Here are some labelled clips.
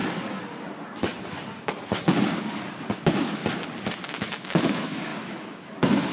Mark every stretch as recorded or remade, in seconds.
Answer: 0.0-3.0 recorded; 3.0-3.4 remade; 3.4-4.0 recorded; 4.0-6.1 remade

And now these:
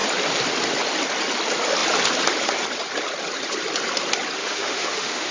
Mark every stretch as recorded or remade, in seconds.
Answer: 0.0-4.4 recorded; 4.4-5.3 remade

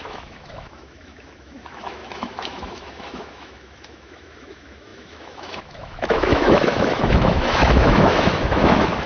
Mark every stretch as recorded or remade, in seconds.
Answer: 0.0-9.1 remade

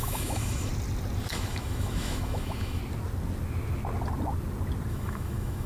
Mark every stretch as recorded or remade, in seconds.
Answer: 0.0-0.7 remade; 0.7-1.3 recorded; 1.3-2.8 remade; 2.8-4.9 recorded; 4.9-5.7 remade

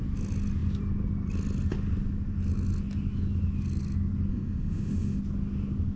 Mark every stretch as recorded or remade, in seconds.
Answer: 0.0-4.3 recorded; 4.3-5.2 remade; 5.2-6.0 recorded

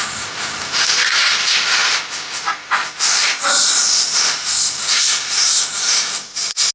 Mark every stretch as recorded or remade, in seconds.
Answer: 0.0-6.7 recorded